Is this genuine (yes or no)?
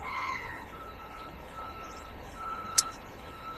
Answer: no